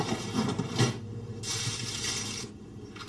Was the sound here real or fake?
real